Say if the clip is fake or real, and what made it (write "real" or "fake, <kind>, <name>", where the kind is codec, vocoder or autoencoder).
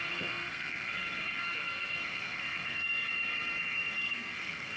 fake, codec, SNAC